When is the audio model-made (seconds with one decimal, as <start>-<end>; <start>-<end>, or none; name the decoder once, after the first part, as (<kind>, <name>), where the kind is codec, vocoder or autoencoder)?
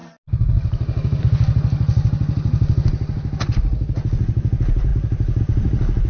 none